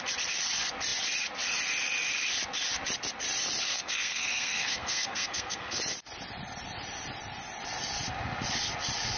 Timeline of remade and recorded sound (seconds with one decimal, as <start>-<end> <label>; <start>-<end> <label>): 0.0-3.7 recorded; 3.7-5.8 remade; 5.8-9.2 recorded